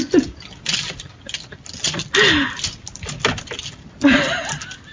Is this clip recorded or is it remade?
recorded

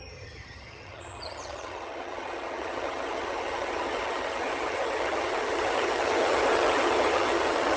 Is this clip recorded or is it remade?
remade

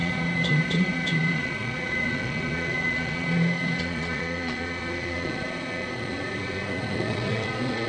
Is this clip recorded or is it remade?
remade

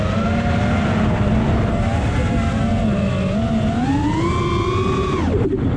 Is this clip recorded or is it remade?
recorded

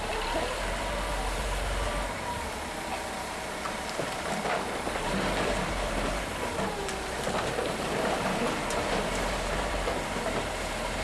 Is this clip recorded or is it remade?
remade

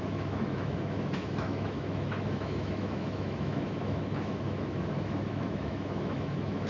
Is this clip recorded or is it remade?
remade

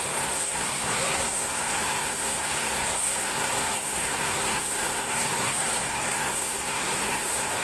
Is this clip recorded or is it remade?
remade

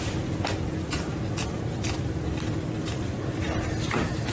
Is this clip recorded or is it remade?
remade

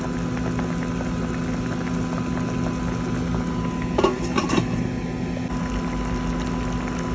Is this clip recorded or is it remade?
recorded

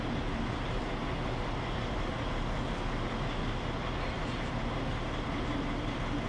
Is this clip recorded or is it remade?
recorded